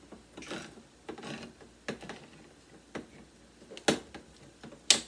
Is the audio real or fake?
real